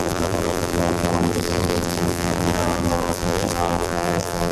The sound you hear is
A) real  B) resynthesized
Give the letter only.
B